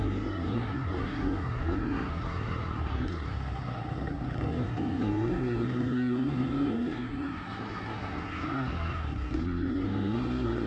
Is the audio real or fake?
fake